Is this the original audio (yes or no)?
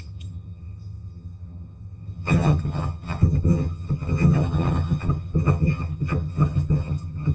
no